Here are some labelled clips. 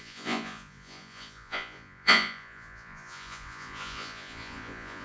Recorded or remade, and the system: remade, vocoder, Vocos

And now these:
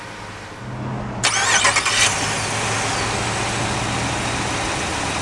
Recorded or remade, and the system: recorded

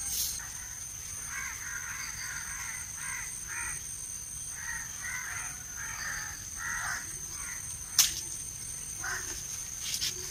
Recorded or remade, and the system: recorded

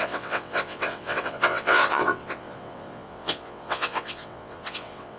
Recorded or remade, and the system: remade, vocoder, WaveNeXt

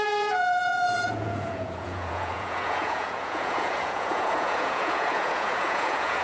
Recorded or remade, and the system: remade, vocoder, Vocos